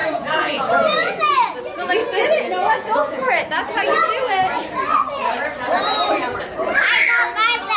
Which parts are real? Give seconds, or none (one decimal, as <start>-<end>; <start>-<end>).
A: 0.6-1.0; 1.6-2.0; 3.3-7.8